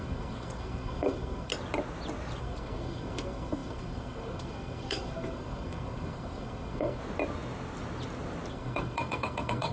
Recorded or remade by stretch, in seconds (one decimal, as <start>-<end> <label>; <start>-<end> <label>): 0.0-1.5 remade; 1.5-2.4 recorded; 2.4-7.0 remade; 7.0-8.5 recorded; 8.5-9.7 remade